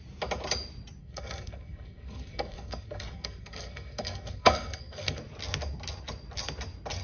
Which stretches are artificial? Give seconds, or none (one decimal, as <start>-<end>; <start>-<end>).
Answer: 1.0-5.2